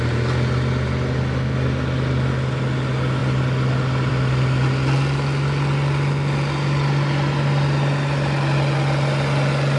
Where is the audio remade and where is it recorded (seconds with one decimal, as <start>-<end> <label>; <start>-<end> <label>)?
0.0-9.8 recorded